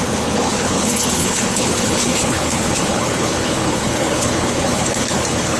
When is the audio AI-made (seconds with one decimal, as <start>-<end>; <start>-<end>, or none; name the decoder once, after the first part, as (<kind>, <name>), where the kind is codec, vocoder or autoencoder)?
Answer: 0.0-5.6 (codec, HILCodec)